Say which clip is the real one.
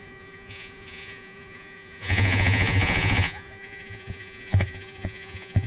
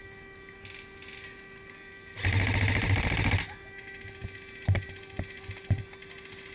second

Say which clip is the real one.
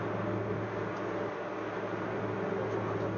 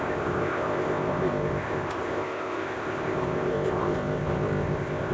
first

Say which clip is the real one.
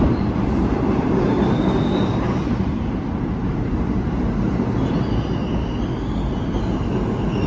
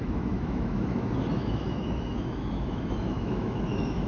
first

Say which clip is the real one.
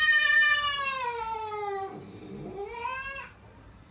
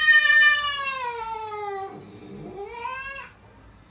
second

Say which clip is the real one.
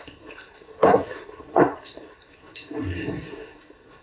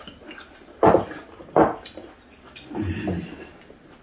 second